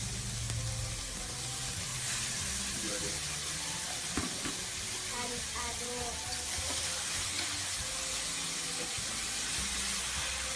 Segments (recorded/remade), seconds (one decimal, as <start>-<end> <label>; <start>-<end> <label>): 0.0-10.6 recorded